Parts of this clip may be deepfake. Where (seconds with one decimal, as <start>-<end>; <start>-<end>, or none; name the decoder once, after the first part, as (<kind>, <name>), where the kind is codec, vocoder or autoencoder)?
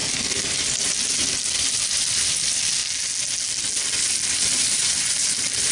0.0-2.8 (vocoder, BigVGAN v2); 4.0-5.7